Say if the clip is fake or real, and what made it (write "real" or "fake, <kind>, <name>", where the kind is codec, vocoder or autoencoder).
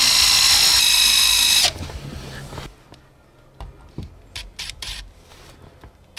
real